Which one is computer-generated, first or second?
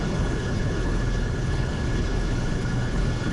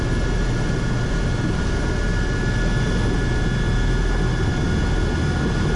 first